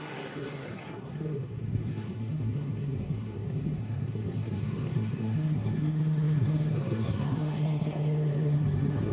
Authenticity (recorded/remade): remade